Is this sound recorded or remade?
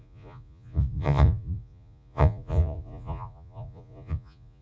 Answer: remade